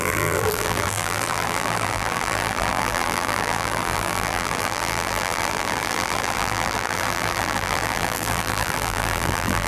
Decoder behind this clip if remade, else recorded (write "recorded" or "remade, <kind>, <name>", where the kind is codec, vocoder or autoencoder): remade, vocoder, BigVGAN v2